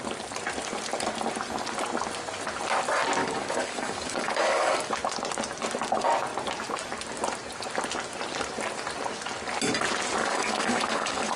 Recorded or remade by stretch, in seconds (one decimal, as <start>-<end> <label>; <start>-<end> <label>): 0.0-3.2 recorded; 3.2-4.9 remade; 4.9-10.2 recorded; 10.2-11.4 remade